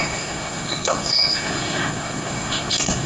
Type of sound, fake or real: fake